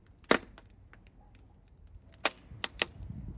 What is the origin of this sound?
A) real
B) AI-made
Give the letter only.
A